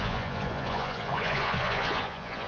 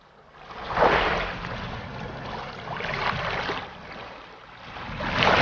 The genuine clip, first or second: second